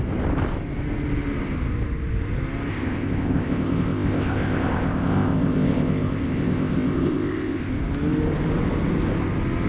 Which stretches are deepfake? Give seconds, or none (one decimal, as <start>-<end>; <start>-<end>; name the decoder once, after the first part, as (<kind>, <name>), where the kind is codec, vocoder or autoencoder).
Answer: 2.7-7.7 (codec, ZipCodec)